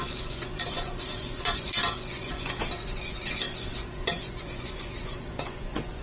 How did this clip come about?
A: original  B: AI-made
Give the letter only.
B